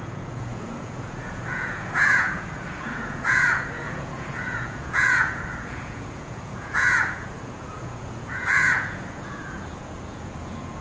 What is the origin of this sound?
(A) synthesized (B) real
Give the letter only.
A